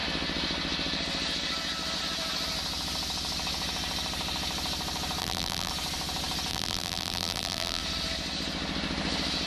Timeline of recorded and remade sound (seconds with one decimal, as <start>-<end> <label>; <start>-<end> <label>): 0.0-5.2 recorded; 5.2-5.7 remade; 5.7-6.5 recorded; 6.5-7.8 remade; 7.8-9.5 recorded